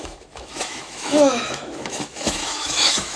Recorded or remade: remade